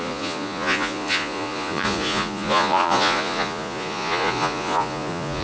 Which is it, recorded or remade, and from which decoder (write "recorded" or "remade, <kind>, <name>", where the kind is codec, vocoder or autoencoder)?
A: remade, vocoder, Vocos